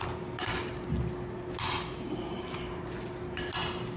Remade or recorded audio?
recorded